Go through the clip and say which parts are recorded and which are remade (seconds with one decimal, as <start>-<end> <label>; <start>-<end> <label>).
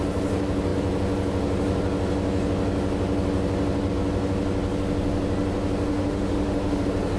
0.0-5.9 recorded; 5.9-6.8 remade; 6.8-7.2 recorded